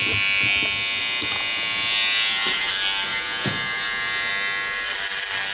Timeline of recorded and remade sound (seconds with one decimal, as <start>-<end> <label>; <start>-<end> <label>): 0.0-1.0 recorded; 1.0-2.7 remade; 2.7-3.1 recorded; 3.1-4.3 remade; 4.3-5.5 recorded